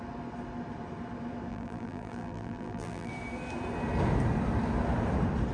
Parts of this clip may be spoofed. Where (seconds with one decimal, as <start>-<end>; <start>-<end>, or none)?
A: 1.5-3.1